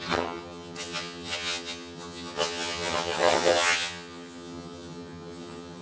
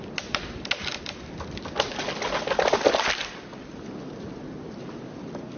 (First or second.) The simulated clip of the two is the first